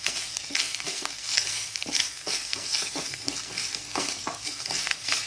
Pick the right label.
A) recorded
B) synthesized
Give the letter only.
B